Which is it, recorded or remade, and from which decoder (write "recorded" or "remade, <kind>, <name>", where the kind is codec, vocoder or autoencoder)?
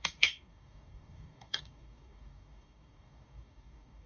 remade, codec, DAC